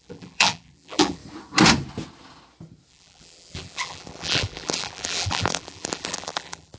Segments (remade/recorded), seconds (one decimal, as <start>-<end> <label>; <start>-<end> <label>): 0.0-1.2 remade; 1.2-2.9 recorded; 2.9-6.8 remade